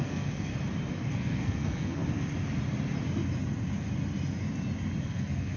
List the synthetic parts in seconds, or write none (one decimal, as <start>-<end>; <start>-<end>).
0.0-0.5; 1.1-2.0; 5.0-5.6